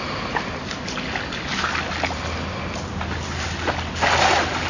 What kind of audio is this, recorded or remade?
recorded